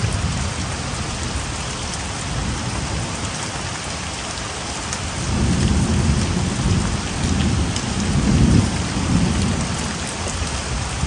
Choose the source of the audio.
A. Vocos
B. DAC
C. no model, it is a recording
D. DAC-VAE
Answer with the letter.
C